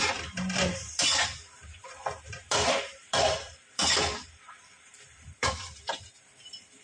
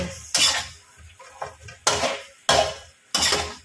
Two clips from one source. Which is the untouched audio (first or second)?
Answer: second